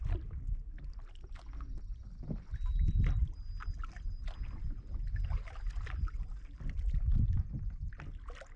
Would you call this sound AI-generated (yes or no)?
no